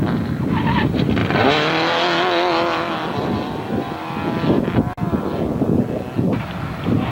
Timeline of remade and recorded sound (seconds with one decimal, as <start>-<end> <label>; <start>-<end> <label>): 0.0-7.1 recorded